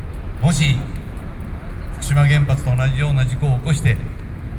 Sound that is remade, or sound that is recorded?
recorded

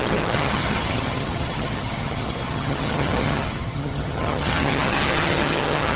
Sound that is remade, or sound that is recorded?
remade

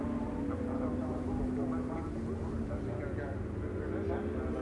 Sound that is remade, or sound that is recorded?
recorded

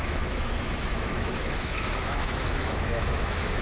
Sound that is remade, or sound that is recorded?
remade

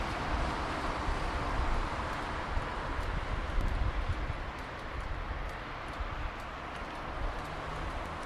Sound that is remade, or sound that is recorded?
remade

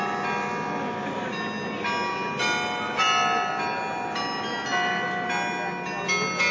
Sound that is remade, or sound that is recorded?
recorded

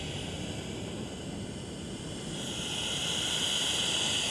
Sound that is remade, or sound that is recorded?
recorded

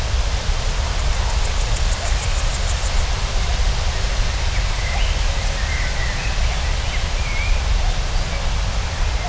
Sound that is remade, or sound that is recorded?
recorded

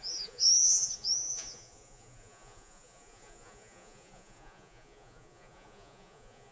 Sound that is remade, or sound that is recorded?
remade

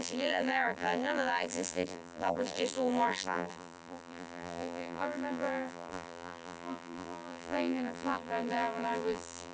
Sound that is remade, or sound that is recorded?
remade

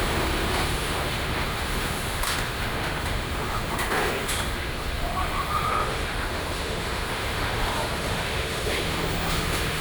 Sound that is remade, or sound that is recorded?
remade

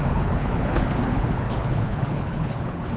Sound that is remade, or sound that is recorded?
remade